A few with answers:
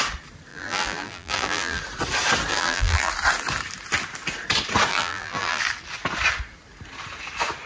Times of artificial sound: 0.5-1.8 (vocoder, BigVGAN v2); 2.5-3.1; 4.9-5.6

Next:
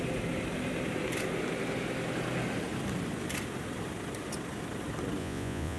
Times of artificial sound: 5.2-5.8 (vocoder, Vocos)

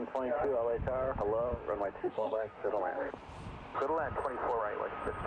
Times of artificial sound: 2.0-2.7 (codec, SNAC)

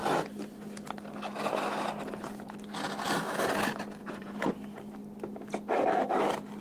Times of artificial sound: 4.0-4.5 (vocoder, Vocos)

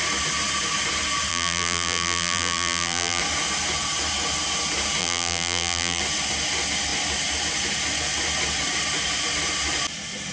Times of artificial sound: 1.3-3.2 (vocoder, BigVGAN v2); 5.0-6.0

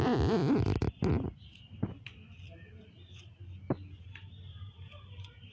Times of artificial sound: 0.0-1.4 (vocoder, BigVGAN v2); 4.0-5.5